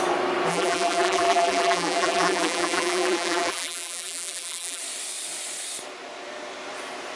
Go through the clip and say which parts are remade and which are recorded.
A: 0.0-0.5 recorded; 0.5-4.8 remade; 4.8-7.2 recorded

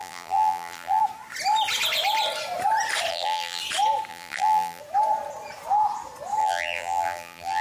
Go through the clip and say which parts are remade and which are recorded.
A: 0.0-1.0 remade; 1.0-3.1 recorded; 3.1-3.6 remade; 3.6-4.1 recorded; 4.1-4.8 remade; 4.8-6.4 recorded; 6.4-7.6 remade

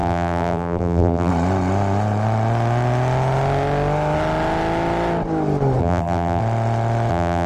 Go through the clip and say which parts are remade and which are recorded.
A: 0.0-1.3 remade; 1.3-5.8 recorded; 5.8-6.4 remade; 6.4-7.1 recorded; 7.1-7.5 remade

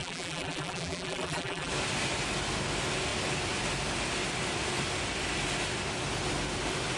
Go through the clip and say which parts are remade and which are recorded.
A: 0.0-1.7 remade; 1.7-7.0 recorded